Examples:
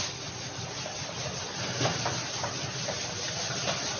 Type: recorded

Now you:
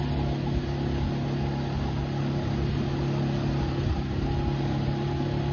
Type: recorded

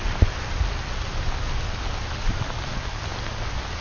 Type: recorded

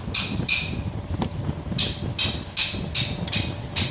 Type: recorded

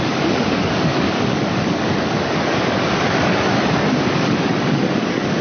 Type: remade